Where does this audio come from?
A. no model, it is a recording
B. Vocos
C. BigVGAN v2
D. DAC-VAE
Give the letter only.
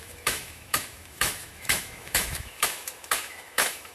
D